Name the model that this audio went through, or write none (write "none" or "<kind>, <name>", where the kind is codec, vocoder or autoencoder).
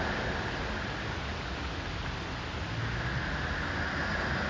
none